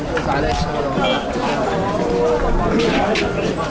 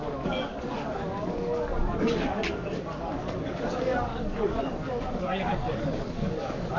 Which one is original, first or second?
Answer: first